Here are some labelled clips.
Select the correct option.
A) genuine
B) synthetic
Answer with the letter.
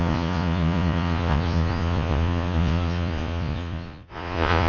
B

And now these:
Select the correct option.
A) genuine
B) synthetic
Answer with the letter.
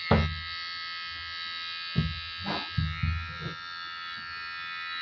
A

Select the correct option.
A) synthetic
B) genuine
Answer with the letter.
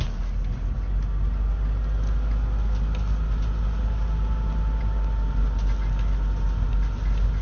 B